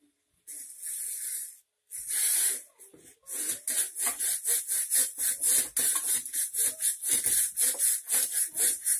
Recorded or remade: recorded